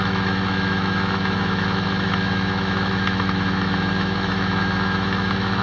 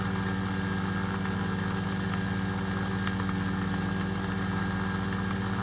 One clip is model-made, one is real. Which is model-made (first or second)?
first